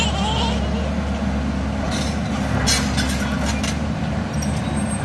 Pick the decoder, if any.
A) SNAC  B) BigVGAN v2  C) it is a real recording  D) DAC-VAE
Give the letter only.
C